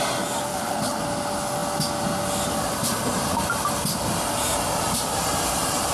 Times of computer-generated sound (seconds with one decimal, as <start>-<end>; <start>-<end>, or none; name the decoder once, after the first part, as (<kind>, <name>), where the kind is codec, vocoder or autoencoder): 0.5-1.0 (codec, HILCodec)